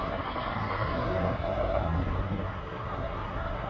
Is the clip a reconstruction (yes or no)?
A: yes